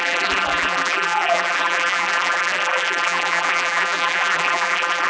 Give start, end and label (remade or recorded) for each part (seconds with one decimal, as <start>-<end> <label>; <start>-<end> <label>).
0.0-5.1 remade